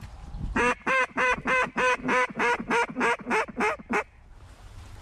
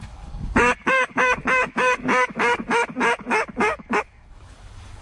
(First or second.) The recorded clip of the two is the first